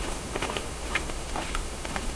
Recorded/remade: remade